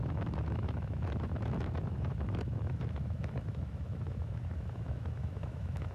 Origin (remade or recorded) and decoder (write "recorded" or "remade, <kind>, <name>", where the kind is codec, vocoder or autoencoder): remade, autoencoder, DAC-VAE